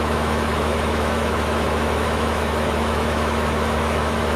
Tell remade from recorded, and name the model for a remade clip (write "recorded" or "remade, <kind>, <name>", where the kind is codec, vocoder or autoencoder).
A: remade, autoencoder, DAC-VAE